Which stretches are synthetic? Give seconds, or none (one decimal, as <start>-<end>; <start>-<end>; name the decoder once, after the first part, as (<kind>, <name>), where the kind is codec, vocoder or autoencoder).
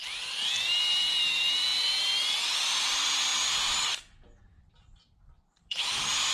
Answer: none